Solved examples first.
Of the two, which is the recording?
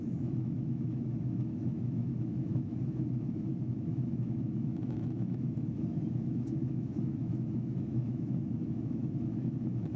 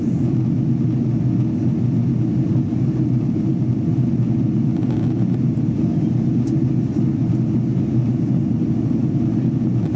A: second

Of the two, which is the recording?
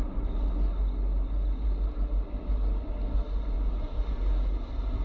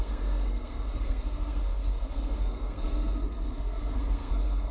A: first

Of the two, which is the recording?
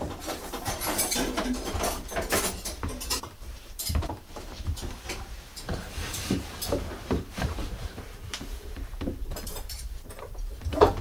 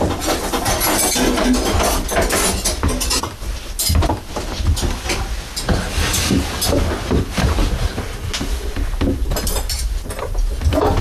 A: second